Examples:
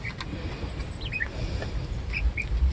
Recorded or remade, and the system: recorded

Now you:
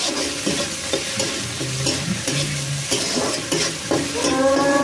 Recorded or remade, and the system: recorded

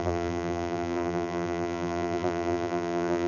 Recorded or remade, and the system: remade, vocoder, BigVGAN v2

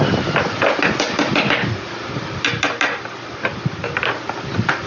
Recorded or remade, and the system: recorded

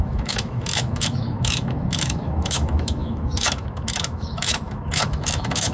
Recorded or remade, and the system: remade, autoencoder, DAC-VAE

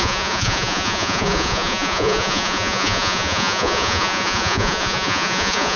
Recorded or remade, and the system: remade, vocoder, Vocos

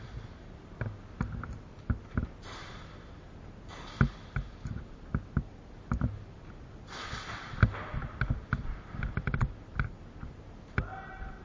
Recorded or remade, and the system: recorded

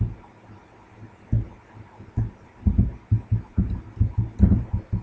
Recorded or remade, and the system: recorded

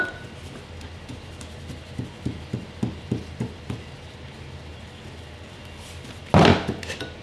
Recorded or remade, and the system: recorded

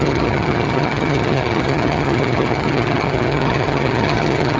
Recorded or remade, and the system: remade, vocoder, HiFi-GAN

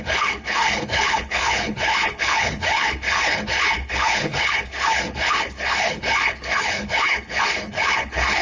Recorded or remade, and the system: remade, codec, HILCodec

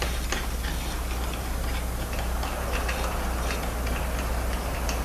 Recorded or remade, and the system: recorded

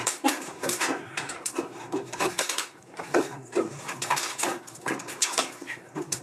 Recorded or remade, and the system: remade, codec, SNAC